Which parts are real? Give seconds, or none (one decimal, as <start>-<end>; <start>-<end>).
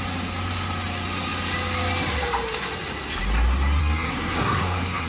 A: 0.0-3.8